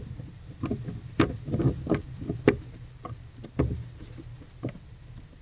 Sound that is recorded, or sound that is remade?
recorded